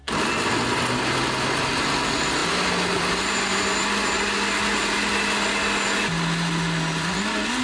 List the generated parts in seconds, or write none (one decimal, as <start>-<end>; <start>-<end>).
none